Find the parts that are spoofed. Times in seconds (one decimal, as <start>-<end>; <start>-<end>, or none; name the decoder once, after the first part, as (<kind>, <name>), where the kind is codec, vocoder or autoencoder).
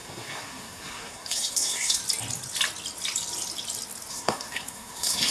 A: 0.0-2.0 (codec, SNAC); 4.1-5.3